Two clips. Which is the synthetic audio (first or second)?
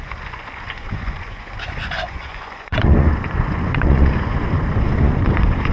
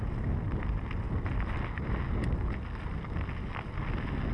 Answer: first